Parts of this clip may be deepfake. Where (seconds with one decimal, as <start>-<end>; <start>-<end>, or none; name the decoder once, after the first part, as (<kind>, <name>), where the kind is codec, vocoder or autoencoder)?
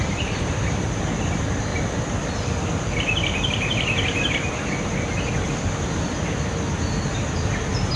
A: 1.7-6.5 (vocoder, BigVGAN v2)